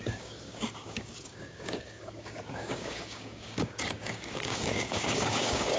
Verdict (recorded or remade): remade